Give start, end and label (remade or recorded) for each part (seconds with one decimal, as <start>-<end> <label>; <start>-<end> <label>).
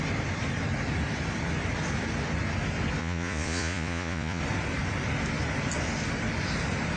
0.0-3.0 recorded; 3.0-4.4 remade; 4.4-7.0 recorded